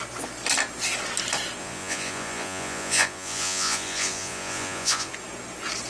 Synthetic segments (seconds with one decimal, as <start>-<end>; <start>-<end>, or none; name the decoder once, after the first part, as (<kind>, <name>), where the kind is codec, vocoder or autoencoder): 1.6-5.1 (vocoder, Vocos)